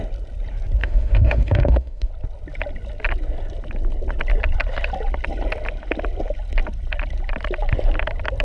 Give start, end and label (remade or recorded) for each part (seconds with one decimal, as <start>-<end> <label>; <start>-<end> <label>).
0.0-0.8 recorded; 0.8-2.1 remade; 2.1-8.4 recorded